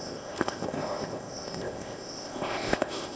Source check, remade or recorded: remade